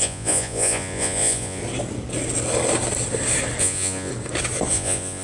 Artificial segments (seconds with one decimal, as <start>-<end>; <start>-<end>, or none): 0.0-1.6; 3.6-4.1; 4.7-5.2